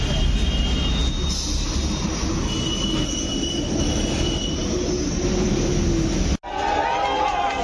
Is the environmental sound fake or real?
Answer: real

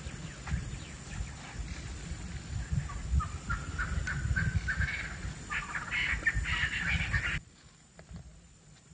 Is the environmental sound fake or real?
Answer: real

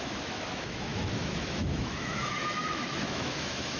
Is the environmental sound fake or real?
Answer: fake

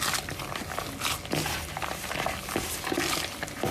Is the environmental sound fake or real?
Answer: real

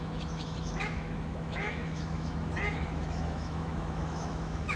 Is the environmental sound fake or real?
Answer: fake